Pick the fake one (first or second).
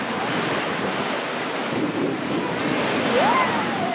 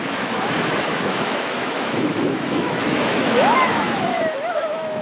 second